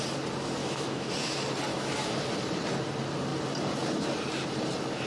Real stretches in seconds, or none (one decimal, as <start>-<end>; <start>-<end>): 0.0-0.6; 1.1-1.7; 2.2-5.1